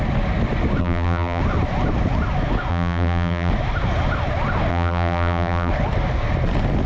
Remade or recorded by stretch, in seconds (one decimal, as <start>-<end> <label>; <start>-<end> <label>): 0.0-0.8 recorded; 0.8-1.4 remade; 1.4-2.7 recorded; 2.7-3.5 remade; 3.5-4.7 recorded; 4.7-5.7 remade; 5.7-6.9 recorded

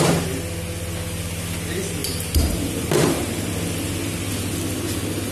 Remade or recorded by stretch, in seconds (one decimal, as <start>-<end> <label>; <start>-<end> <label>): 0.0-2.0 recorded; 2.0-3.3 remade; 3.3-5.3 recorded

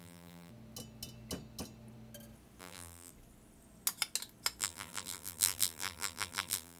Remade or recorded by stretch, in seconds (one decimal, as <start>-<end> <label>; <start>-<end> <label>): 0.0-0.5 remade; 0.5-2.6 recorded; 2.6-3.1 remade; 3.1-4.6 recorded; 4.6-6.8 remade

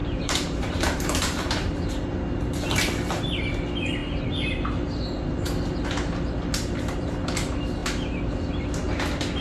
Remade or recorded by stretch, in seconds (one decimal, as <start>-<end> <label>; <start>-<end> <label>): 0.0-1.7 remade; 1.7-9.4 recorded

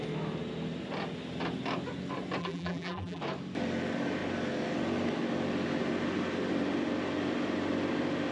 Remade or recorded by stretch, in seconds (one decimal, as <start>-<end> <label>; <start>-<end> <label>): 0.0-2.4 recorded; 2.4-3.2 remade; 3.2-8.3 recorded

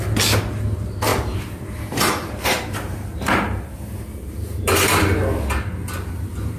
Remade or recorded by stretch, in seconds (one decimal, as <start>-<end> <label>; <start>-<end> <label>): 0.0-1.1 recorded; 1.1-5.0 remade; 5.0-6.6 recorded